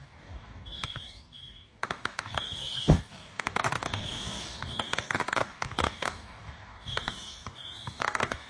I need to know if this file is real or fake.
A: fake